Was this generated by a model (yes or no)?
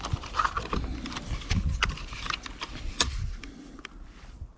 no